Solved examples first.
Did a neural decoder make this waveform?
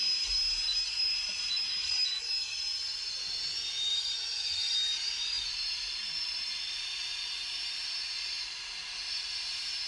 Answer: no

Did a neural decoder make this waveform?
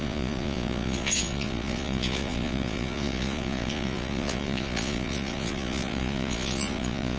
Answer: yes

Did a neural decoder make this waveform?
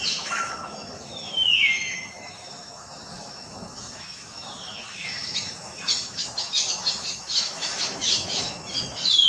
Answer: yes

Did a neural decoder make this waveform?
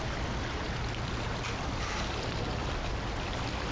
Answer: no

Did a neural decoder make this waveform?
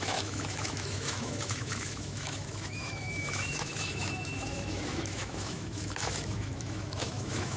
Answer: yes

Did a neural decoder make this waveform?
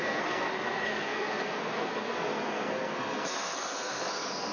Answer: yes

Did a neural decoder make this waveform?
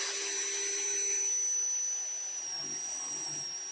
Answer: no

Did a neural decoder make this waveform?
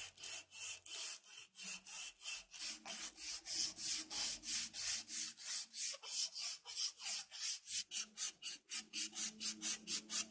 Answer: no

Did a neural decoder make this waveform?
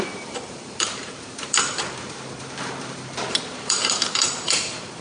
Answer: yes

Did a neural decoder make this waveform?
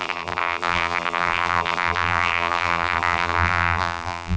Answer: yes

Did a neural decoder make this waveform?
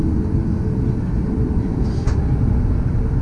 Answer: no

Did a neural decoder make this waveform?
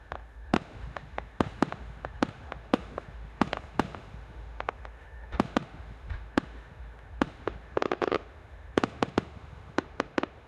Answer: yes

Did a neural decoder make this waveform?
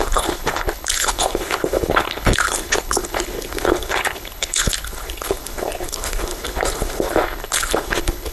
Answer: yes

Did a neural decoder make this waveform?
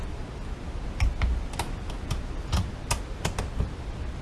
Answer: no